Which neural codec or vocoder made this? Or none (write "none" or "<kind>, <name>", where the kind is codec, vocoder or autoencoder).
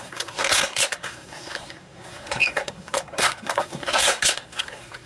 codec, SNAC